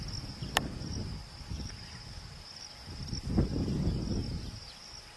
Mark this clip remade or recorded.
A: recorded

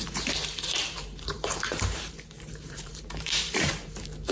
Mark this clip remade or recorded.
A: remade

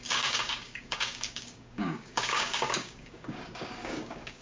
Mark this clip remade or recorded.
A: remade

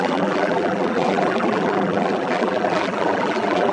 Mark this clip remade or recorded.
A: remade